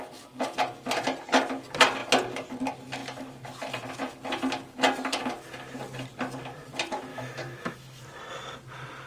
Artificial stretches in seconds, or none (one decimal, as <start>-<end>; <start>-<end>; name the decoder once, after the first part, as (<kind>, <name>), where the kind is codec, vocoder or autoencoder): 7.1-8.0 (autoencoder, DAC-VAE)